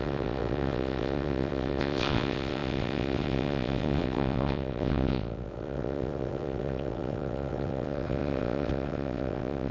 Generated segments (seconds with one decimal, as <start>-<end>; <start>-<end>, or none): 0.0-9.7

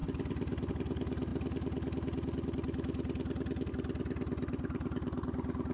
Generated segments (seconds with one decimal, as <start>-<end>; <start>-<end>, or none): none

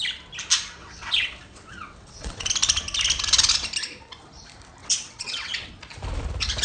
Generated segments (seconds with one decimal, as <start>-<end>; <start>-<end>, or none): 0.8-2.5; 4.8-5.7

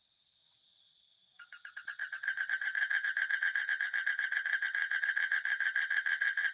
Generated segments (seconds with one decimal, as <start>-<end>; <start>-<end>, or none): 0.0-6.5

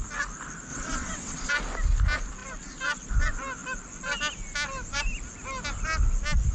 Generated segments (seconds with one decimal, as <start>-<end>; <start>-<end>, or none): 0.7-1.5

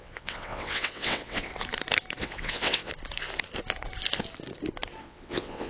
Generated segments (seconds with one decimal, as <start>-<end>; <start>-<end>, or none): 0.0-1.5; 2.2-2.9; 5.0-5.7